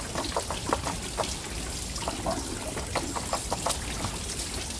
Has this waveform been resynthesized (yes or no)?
no